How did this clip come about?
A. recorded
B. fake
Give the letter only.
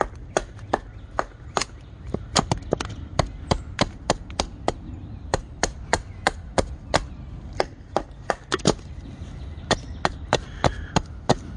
A